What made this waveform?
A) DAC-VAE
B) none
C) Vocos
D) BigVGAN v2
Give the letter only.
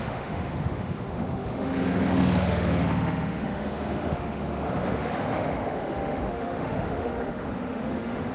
A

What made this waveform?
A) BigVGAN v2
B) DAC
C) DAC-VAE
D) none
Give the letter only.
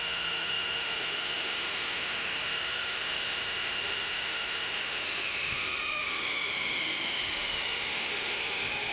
C